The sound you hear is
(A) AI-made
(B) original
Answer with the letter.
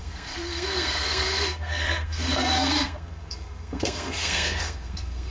A